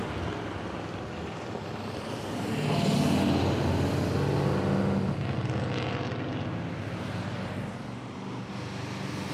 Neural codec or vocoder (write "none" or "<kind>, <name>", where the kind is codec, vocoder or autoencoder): none